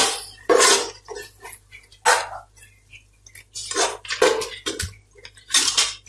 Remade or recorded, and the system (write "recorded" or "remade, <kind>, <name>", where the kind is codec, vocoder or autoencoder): recorded